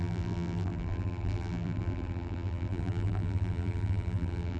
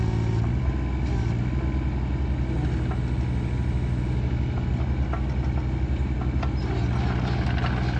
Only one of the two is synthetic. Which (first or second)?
first